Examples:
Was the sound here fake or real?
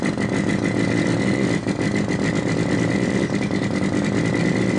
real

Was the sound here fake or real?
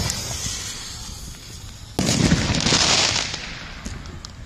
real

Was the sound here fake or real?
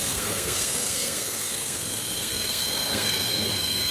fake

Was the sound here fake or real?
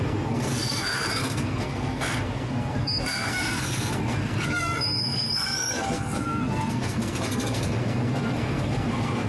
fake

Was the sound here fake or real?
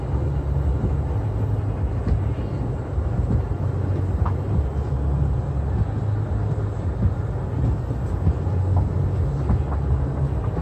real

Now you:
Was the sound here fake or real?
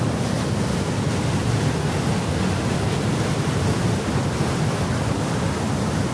real